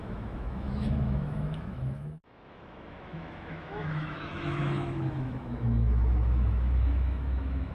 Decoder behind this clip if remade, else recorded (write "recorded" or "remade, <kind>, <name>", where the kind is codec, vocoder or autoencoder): remade, autoencoder, DAC-VAE